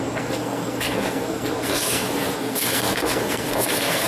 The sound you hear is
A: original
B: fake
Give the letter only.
B